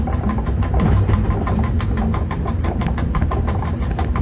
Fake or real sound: real